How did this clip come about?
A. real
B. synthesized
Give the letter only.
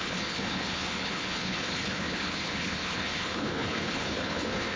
B